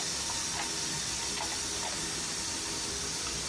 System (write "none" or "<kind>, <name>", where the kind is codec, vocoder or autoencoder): none